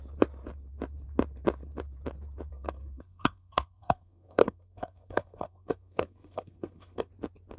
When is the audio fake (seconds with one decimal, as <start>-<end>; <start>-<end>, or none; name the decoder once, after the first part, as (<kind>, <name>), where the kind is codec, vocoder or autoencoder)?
2.5-7.1 (codec, SNAC)